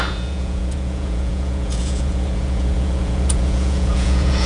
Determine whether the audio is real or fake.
fake